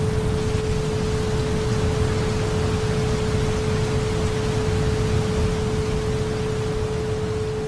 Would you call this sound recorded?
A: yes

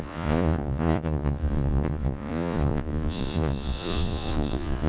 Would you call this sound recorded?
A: no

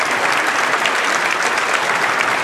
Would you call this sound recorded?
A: yes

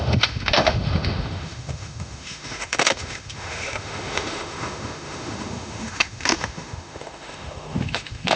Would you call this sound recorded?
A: no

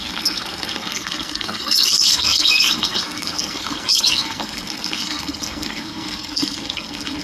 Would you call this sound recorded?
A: no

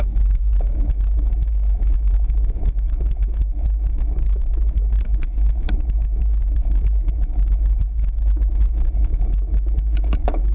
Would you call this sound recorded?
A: no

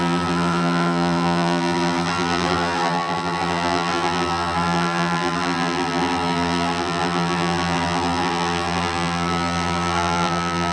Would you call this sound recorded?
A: no